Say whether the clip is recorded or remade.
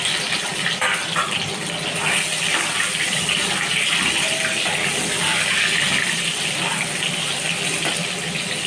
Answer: recorded